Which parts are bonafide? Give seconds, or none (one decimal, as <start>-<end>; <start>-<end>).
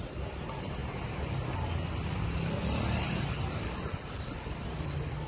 0.0-5.3